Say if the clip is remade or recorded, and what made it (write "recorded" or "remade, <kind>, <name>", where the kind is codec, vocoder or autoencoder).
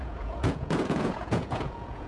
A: remade, vocoder, Vocos